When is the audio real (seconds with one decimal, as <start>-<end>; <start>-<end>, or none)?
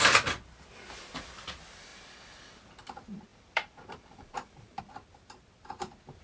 0.0-3.3; 4.8-6.2